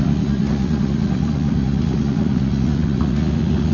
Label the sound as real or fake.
fake